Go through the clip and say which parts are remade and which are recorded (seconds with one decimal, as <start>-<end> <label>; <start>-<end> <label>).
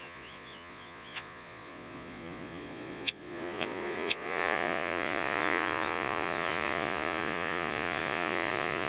0.0-8.9 remade